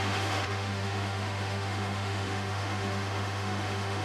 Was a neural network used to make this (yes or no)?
yes